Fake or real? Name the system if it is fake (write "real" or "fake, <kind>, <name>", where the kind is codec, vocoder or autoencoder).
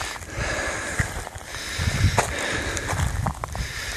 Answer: real